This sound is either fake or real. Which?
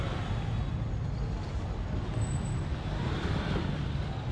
real